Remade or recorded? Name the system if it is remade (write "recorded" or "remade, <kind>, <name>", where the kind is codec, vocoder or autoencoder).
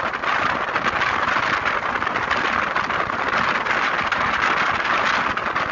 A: recorded